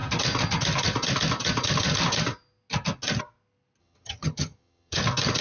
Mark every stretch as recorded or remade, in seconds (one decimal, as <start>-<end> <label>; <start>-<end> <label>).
0.0-3.8 recorded; 3.8-5.0 remade; 5.0-5.4 recorded